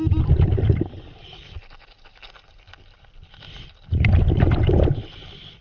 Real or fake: real